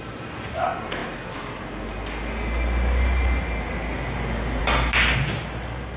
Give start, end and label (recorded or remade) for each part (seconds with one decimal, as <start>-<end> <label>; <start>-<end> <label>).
0.0-6.0 recorded